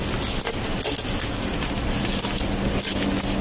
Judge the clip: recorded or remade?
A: recorded